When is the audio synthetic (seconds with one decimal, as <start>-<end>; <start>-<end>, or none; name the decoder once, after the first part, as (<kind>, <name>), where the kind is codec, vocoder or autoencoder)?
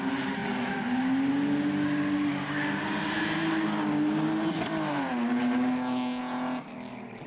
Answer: 5.2-6.2 (codec, DAC)